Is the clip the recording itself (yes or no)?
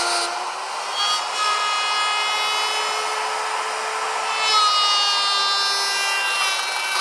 yes